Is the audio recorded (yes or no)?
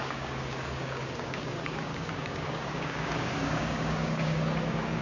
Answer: no